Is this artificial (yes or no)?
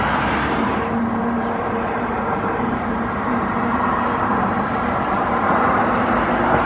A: yes